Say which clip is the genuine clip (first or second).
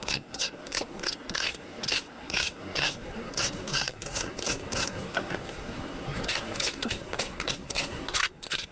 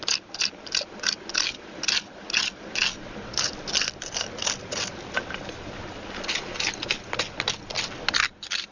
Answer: second